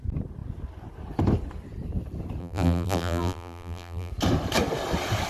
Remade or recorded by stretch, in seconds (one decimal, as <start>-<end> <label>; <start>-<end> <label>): 0.0-2.4 recorded; 2.4-4.1 remade; 4.1-5.3 recorded